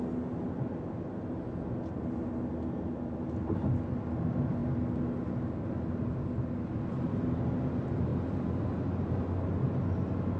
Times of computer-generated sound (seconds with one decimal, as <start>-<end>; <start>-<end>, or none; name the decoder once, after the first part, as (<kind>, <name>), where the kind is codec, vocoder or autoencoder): none